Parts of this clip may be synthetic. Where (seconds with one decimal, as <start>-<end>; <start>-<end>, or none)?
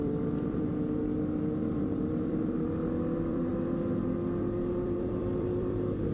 0.0-0.7; 1.7-3.5; 4.7-6.1